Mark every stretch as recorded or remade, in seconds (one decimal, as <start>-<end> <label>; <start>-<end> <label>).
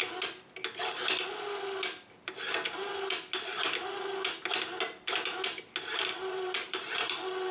0.0-6.2 recorded; 6.2-7.5 remade